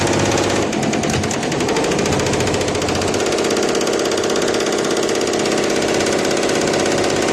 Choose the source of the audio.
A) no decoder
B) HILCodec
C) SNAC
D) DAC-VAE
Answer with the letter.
A